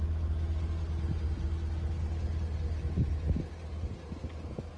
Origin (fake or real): real